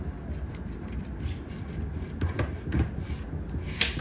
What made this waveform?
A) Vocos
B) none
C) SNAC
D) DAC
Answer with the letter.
B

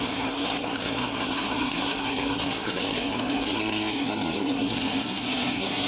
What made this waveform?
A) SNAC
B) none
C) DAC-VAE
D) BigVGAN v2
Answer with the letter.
A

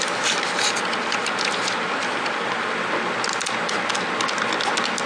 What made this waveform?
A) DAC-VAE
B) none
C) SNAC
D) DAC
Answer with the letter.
B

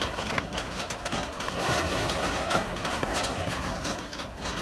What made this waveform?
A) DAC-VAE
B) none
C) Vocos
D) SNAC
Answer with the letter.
D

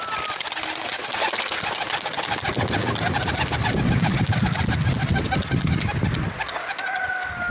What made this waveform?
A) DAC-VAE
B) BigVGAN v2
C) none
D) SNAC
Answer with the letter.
C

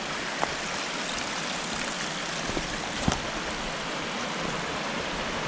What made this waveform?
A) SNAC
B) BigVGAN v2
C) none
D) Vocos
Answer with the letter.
C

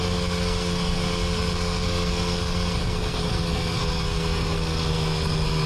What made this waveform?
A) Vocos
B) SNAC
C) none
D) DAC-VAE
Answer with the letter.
B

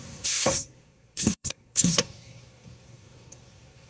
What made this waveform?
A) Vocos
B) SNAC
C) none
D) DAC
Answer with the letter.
B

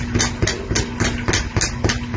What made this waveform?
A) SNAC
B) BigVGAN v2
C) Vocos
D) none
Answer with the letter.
D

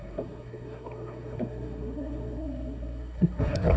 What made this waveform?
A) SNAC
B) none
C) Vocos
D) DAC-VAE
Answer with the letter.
A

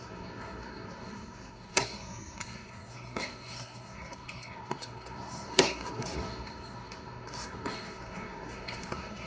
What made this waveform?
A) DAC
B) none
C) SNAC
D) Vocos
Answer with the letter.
C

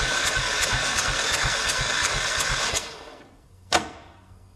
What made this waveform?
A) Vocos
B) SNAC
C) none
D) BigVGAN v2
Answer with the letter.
B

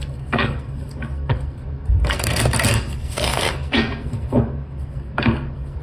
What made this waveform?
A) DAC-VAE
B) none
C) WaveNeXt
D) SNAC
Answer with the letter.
D